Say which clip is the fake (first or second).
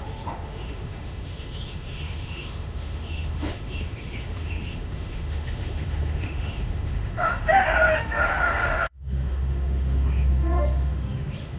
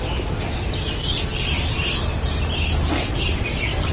first